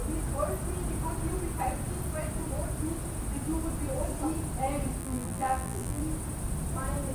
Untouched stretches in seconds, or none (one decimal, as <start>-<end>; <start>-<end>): 0.0-5.0; 6.0-7.1